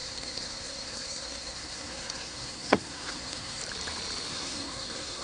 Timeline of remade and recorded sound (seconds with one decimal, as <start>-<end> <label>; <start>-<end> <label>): 0.0-3.6 remade; 3.6-4.3 recorded; 4.3-5.2 remade